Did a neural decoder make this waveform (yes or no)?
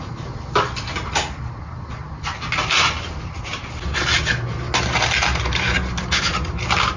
no